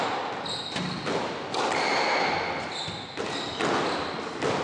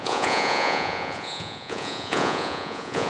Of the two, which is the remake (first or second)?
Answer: second